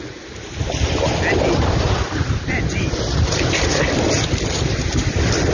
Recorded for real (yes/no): yes